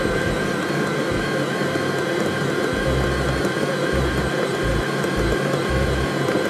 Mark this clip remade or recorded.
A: recorded